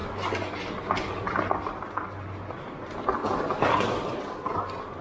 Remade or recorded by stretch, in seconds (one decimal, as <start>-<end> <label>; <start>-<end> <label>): 0.0-5.0 recorded